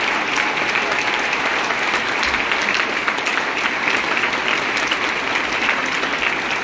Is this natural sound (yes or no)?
yes